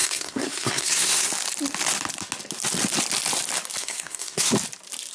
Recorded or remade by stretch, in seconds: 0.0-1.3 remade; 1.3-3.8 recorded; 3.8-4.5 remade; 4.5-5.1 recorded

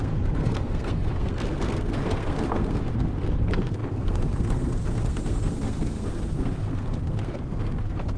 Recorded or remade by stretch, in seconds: 0.0-8.2 remade